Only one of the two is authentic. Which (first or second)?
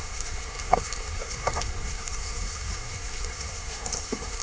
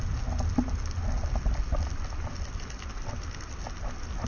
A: second